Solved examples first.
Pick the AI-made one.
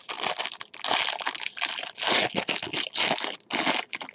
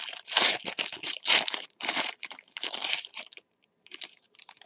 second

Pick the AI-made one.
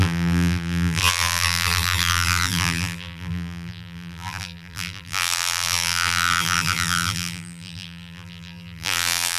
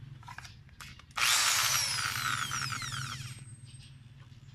first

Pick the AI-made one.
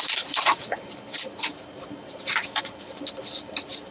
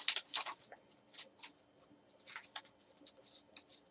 first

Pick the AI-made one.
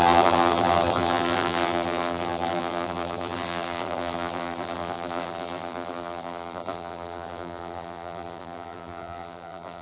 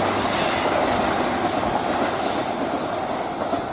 first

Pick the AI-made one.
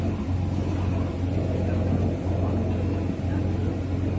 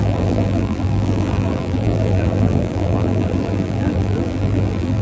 second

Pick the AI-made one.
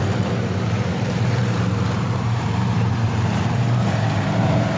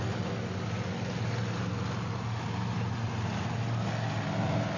first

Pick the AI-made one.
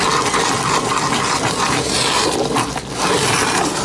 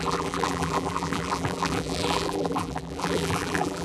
second